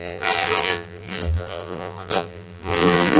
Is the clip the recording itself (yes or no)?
no